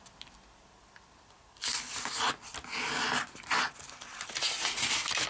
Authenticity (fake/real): real